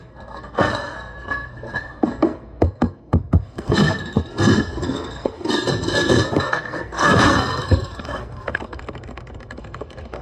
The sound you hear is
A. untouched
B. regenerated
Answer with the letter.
B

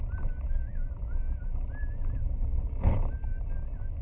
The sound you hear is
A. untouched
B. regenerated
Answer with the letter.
A